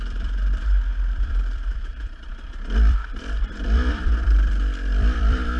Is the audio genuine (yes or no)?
no